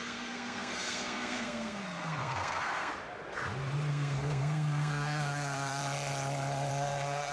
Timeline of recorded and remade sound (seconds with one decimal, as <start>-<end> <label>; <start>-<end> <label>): 0.0-2.9 remade; 2.9-3.9 recorded; 3.9-5.8 remade; 5.8-6.7 recorded; 6.7-7.3 remade